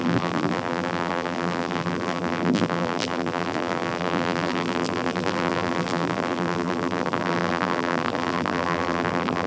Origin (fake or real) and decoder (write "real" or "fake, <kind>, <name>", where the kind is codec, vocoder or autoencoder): fake, vocoder, BigVGAN v2